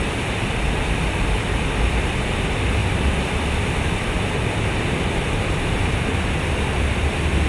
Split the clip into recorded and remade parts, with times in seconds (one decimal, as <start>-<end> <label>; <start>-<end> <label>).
0.0-2.8 remade; 2.8-3.4 recorded; 3.4-7.5 remade